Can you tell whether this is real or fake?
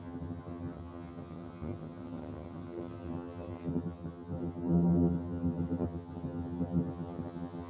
fake